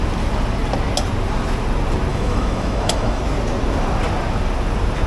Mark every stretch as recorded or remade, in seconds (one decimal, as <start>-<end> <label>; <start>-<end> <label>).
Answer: 0.0-2.1 recorded; 2.1-3.2 remade; 3.2-5.1 recorded